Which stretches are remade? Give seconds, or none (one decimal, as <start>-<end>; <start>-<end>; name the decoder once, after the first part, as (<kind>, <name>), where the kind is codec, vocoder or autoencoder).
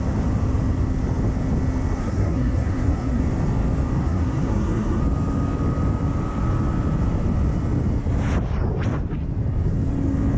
2.0-3.2 (codec, SNAC); 4.0-5.0